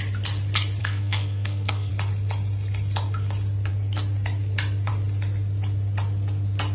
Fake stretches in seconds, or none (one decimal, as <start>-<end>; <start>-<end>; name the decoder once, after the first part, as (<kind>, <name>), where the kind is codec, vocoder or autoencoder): 0.8-1.9 (codec, SNAC)